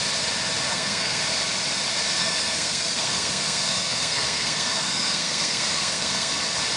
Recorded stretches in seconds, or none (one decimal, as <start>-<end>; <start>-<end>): 0.0-0.7; 1.2-2.2; 6.3-6.8